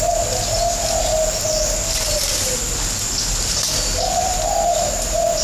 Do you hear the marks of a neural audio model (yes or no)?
no